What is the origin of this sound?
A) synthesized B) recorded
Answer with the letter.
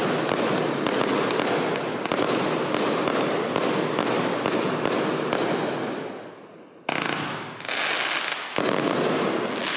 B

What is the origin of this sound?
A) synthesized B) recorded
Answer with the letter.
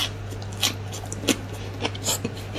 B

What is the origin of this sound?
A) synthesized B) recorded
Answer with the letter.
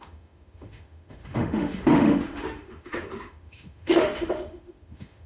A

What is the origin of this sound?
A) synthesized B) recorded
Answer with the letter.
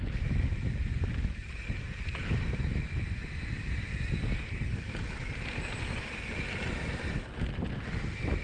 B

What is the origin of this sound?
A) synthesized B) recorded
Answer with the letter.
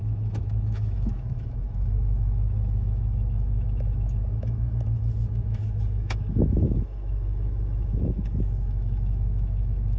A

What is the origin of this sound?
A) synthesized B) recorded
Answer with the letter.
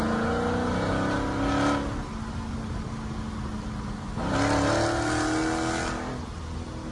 B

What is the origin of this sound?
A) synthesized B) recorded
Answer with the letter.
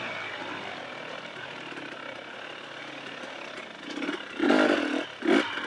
B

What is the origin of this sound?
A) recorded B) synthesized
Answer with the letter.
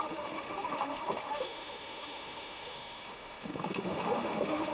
B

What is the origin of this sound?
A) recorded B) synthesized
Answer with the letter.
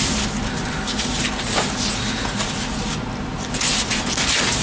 A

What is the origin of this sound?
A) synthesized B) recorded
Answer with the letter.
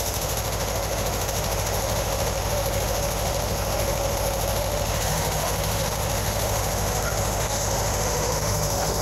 A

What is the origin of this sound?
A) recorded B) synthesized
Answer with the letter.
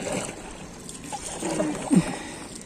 A